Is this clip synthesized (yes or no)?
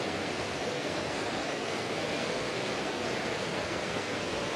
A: yes